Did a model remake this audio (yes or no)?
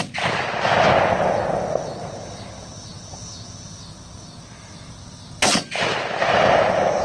no